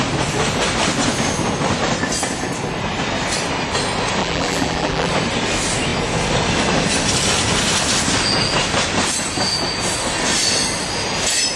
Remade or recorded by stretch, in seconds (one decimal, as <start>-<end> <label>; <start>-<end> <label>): 0.0-4.2 recorded; 4.2-5.1 remade; 5.1-11.6 recorded